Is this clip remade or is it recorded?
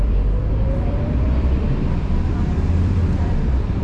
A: remade